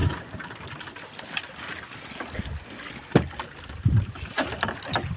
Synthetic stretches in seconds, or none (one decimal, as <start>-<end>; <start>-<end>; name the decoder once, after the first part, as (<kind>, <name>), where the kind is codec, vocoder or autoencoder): none